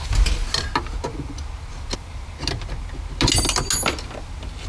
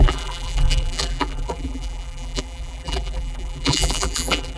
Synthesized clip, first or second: second